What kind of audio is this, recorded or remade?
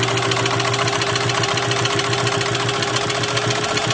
recorded